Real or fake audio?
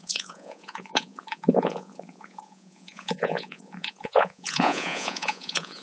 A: fake